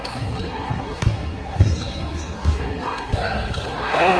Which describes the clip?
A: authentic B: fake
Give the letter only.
B